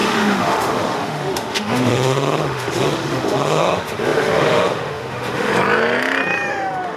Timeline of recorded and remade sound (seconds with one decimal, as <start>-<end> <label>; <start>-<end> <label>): 0.0-5.5 remade; 5.5-6.5 recorded; 6.5-7.0 remade